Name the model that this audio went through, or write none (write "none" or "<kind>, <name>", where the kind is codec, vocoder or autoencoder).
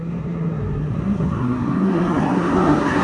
codec, SNAC